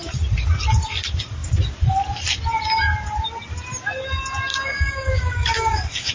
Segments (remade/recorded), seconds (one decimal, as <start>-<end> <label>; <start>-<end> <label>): 0.0-4.5 recorded; 4.5-6.1 remade